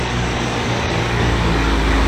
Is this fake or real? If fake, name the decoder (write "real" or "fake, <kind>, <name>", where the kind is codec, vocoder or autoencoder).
fake, codec, DAC